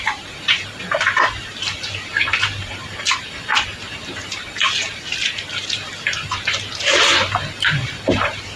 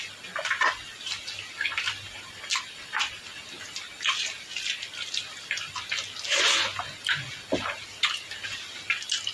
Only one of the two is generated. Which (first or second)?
first